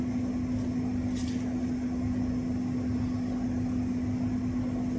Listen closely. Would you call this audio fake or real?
real